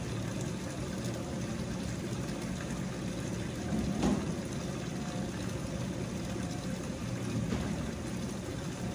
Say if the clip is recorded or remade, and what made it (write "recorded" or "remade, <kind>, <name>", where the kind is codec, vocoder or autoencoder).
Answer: recorded